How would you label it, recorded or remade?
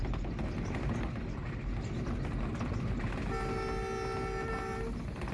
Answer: recorded